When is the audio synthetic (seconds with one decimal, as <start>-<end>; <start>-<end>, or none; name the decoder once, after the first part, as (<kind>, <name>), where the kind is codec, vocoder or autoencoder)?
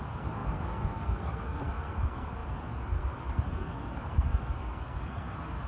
0.0-5.7 (codec, SNAC)